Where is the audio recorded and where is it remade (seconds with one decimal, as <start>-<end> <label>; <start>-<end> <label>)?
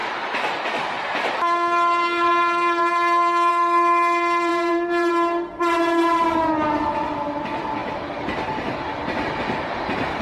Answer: 0.0-3.5 remade; 3.5-4.5 recorded; 4.5-5.1 remade; 5.1-10.2 recorded